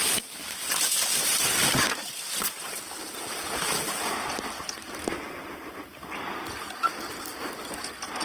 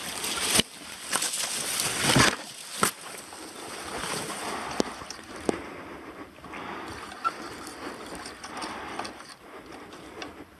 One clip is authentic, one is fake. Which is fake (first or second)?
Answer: first